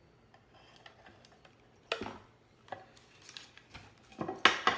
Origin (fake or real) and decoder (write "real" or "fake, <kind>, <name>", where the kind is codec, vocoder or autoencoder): real